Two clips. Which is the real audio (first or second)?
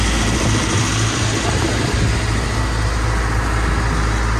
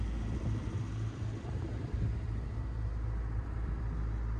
first